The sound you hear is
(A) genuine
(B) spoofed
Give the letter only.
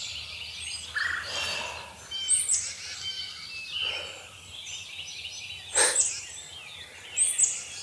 A